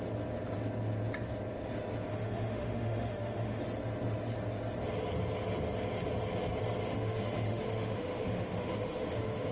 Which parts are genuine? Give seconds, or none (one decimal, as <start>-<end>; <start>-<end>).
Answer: 0.0-2.1; 3.6-6.9